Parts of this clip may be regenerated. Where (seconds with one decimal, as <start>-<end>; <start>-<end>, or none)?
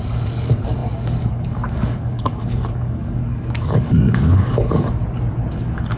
0.0-5.0; 5.5-6.0